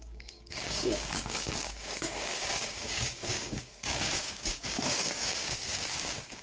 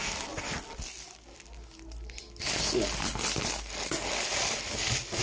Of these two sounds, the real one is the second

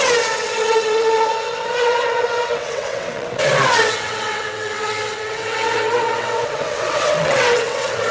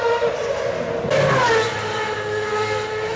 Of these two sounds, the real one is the second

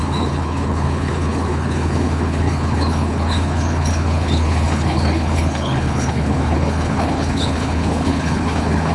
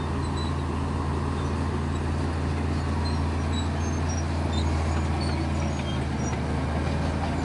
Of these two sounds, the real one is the second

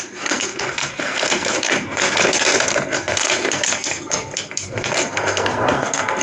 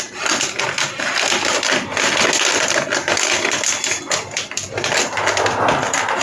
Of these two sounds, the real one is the second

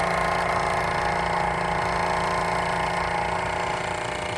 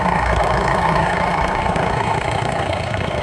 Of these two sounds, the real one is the first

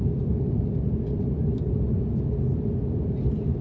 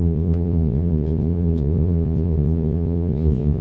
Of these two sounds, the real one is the first